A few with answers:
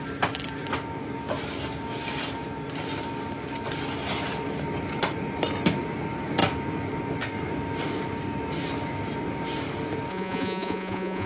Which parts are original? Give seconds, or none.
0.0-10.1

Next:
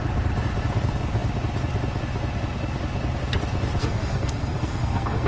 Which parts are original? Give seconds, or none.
0.0-3.8